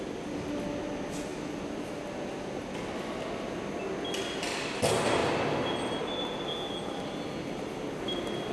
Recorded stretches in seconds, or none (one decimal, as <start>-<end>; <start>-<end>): 0.0-8.5